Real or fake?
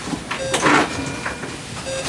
real